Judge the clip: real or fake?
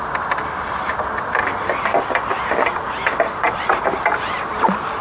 real